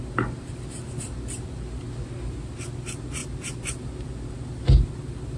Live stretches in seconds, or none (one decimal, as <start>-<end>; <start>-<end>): 0.0-5.4